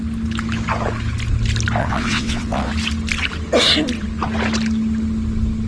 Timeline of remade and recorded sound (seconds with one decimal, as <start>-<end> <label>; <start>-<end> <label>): 0.0-1.8 recorded; 1.8-2.7 remade; 2.7-5.7 recorded